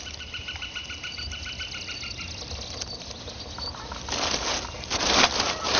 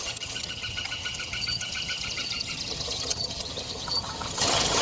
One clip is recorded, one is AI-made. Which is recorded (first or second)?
first